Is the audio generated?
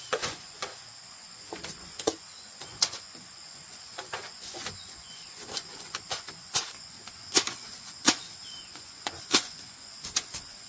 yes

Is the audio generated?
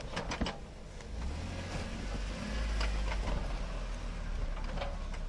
no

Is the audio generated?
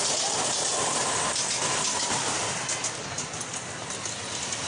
no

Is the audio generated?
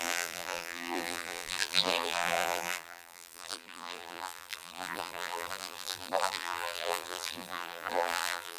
yes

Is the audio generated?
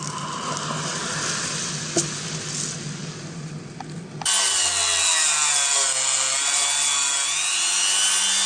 no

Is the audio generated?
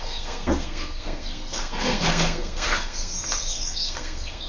yes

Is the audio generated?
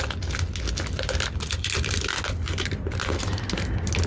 no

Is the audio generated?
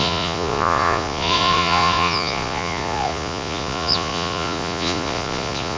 yes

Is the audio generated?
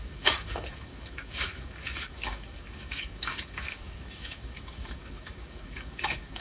yes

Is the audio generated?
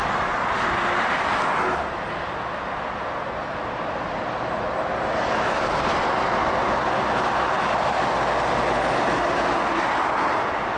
no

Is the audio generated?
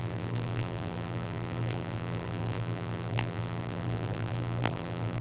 yes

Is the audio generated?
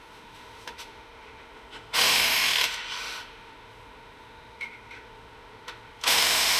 yes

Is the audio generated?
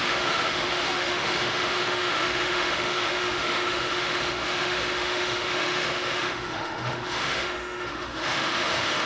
yes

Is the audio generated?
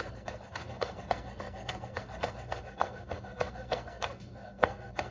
yes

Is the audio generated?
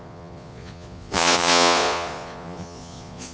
yes